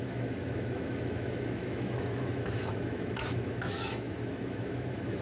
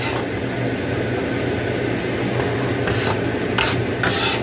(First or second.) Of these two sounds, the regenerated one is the first